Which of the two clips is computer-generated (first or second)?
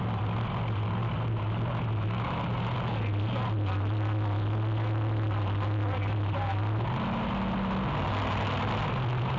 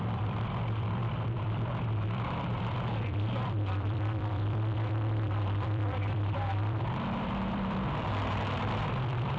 second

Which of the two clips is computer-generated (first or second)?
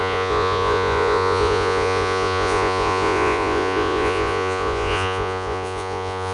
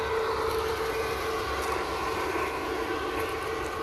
first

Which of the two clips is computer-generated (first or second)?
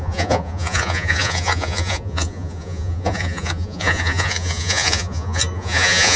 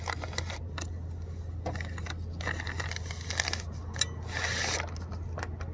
first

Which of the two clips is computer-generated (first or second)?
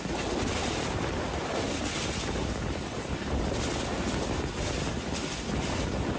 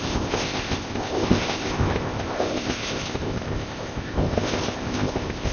second